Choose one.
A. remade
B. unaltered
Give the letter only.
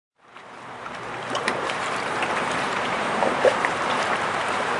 A